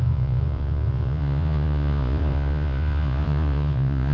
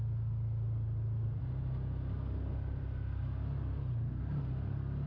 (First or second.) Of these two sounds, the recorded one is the second